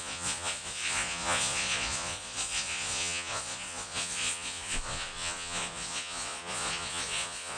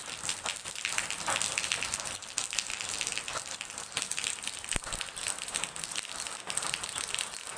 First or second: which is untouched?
second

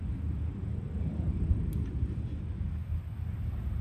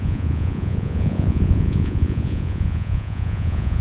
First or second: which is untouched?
first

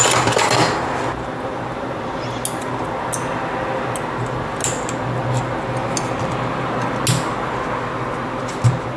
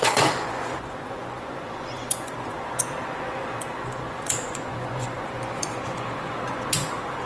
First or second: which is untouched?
first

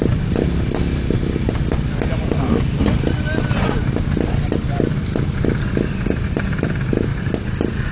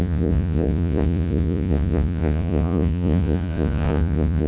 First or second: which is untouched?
first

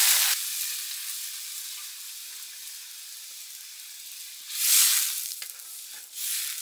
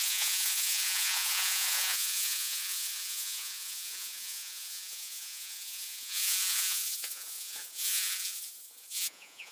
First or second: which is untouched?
first